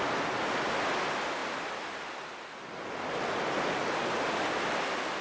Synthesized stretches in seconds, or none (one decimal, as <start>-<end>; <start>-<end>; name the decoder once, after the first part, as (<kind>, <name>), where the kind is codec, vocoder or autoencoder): none